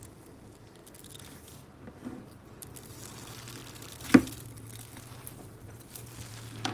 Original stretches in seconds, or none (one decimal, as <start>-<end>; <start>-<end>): 0.0-6.7